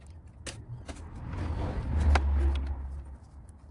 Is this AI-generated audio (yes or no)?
no